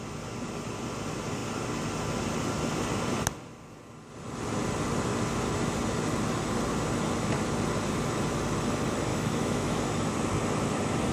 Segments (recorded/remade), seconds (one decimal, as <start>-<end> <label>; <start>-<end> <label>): 0.0-9.1 recorded; 9.1-9.8 remade; 9.8-11.1 recorded